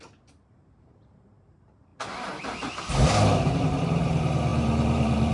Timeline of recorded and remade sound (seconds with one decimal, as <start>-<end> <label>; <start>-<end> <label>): 0.0-5.3 remade

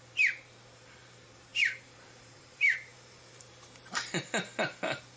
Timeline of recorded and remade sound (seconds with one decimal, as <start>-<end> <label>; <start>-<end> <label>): 0.0-5.2 remade